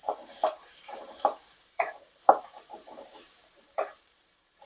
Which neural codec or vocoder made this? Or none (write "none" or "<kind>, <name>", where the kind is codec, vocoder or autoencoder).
vocoder, BigVGAN v2